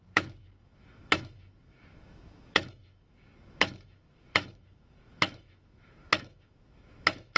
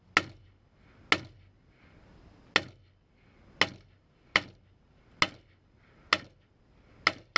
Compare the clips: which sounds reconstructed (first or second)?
first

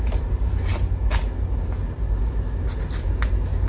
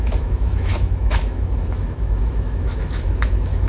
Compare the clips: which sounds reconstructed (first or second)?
second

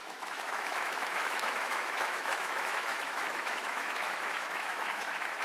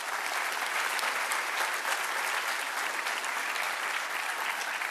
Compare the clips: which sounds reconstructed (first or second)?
first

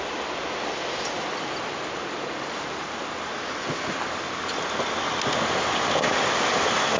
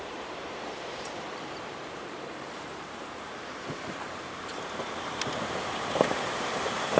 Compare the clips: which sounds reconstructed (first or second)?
second